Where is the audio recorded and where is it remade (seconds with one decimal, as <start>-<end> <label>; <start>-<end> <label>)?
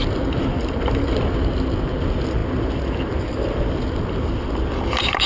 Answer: 0.0-5.3 recorded